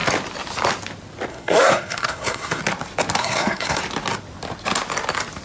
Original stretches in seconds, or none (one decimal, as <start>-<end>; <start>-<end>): 0.0-1.3; 2.6-3.2; 3.8-5.4